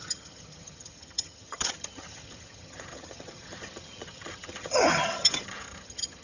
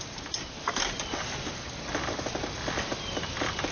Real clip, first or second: second